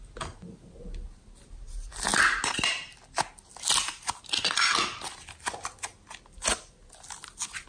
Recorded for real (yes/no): yes